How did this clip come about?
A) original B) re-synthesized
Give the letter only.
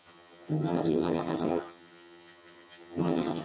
B